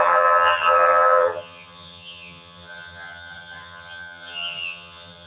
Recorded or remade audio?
remade